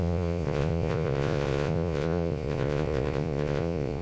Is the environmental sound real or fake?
fake